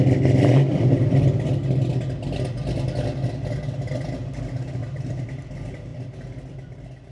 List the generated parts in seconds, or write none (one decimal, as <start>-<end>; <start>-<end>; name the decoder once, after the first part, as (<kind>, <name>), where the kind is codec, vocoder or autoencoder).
4.8-5.5 (vocoder, BigVGAN v2)